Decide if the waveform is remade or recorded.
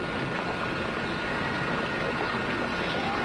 recorded